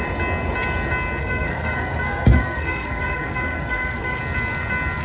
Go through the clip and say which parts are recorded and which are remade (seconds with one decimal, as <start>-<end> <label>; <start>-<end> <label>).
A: 0.0-1.2 recorded; 1.2-4.2 remade; 4.2-5.0 recorded